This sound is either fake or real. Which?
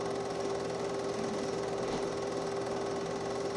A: real